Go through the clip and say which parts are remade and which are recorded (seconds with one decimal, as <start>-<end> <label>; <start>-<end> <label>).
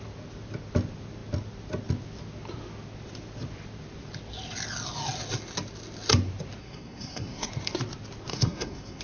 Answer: 0.0-6.6 recorded; 6.6-7.5 remade; 7.5-8.3 recorded; 8.3-9.0 remade